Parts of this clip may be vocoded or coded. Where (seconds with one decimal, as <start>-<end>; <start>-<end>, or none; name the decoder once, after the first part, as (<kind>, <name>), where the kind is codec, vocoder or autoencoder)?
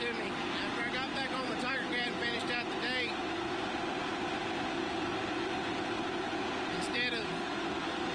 none